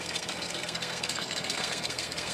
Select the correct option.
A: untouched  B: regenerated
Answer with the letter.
B